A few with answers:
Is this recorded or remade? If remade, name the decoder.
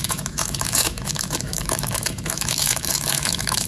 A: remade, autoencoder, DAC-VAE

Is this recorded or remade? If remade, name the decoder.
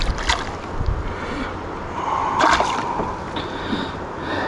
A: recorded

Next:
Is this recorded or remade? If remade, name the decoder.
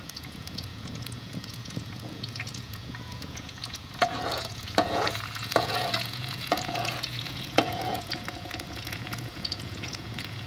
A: remade, vocoder, Vocos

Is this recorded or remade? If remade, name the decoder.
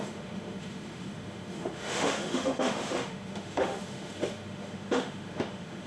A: remade, autoencoder, DAC-VAE